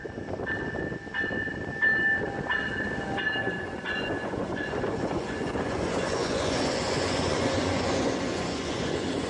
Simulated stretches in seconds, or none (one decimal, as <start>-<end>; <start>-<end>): 3.4-9.3